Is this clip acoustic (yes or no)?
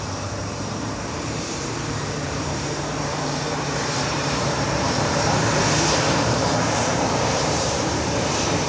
no